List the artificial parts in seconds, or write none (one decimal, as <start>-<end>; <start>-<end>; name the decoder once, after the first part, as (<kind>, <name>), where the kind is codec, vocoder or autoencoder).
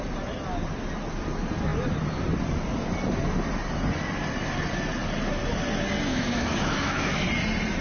6.1-7.2 (autoencoder, DAC-VAE)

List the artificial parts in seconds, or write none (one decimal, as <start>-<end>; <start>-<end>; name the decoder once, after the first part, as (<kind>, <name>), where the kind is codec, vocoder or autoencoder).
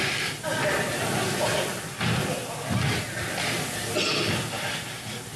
none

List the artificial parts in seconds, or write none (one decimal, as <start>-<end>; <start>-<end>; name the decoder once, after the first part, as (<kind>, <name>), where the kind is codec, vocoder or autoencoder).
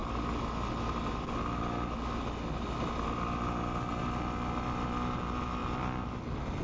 none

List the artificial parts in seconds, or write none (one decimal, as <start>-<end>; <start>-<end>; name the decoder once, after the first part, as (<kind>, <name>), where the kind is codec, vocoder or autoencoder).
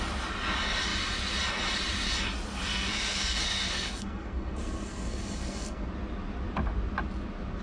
2.7-5.9 (codec, SNAC)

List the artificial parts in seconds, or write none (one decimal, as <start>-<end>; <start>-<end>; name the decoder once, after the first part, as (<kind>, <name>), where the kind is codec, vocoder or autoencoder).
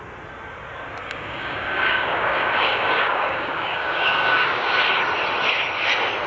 1.0-4.8 (codec, DAC)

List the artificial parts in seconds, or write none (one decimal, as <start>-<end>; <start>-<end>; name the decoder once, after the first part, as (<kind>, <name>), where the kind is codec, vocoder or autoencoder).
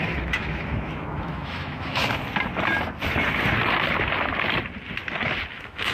0.0-2.0 (autoencoder, DAC-VAE); 5.5-5.9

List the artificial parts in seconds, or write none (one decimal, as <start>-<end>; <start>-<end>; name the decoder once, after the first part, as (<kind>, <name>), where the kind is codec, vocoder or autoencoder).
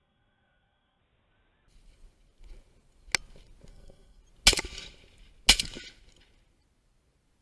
0.0-1.0 (codec, SNAC); 3.7-4.2